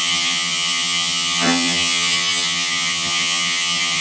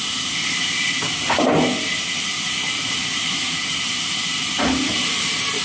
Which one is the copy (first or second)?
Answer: first